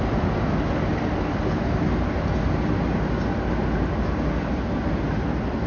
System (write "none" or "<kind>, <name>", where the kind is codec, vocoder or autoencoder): none